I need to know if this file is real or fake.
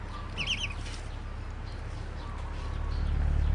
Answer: real